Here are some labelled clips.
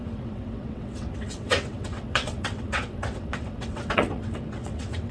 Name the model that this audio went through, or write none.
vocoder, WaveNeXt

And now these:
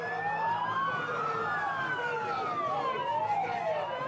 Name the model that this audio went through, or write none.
none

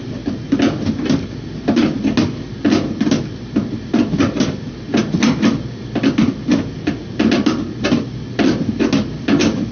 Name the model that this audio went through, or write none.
none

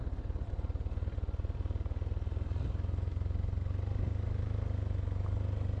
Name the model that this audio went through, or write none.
none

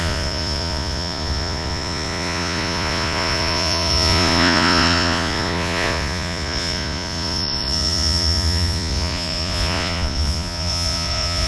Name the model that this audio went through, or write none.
vocoder, Vocos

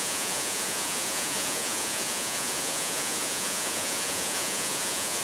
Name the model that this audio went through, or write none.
vocoder, Vocos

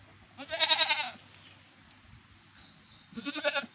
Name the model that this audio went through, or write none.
none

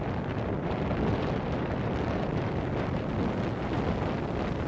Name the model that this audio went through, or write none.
none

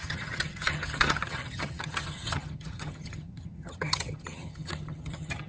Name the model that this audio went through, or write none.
vocoder, HiFi-GAN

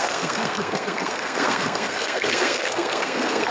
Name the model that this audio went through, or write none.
codec, SNAC